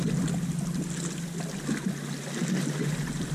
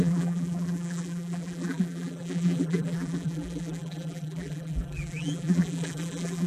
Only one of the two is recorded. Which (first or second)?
first